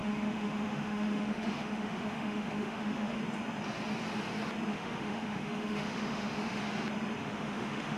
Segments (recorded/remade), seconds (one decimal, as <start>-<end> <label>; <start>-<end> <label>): 0.0-3.2 remade; 3.2-4.7 recorded; 4.7-6.6 remade; 6.6-7.2 recorded; 7.2-8.0 remade